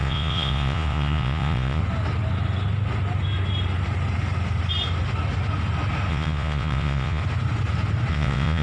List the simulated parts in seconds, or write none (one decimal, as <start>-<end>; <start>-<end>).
0.0-1.8; 6.1-7.2; 8.1-8.6